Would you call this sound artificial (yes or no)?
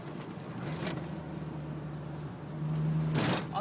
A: no